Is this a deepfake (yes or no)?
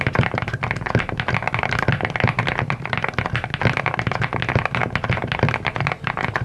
no